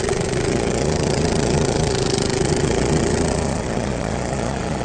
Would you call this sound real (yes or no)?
no